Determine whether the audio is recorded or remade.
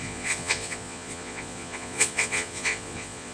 remade